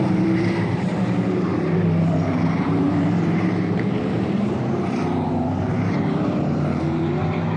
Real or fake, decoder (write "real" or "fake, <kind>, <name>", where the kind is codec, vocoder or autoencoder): fake, vocoder, BigVGAN v2